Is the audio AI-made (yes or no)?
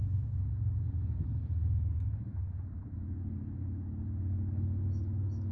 no